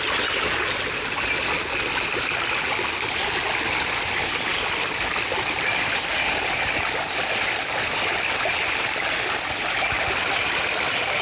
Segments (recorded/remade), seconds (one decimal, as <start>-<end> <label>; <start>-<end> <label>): 0.0-11.2 recorded